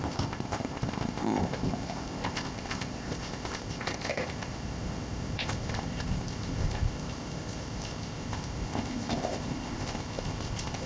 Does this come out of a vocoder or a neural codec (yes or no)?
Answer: yes